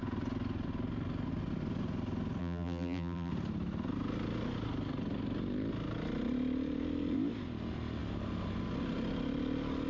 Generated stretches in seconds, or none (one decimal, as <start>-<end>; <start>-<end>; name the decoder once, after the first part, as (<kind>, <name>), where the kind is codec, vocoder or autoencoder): 2.4-3.3 (vocoder, BigVGAN v2)